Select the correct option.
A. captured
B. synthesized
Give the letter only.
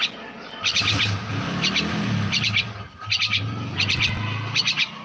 A